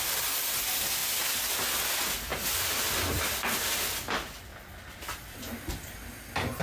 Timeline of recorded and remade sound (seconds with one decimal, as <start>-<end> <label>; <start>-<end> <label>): 0.0-2.3 recorded; 2.3-3.2 remade; 3.2-4.5 recorded; 4.5-5.7 remade; 5.7-6.6 recorded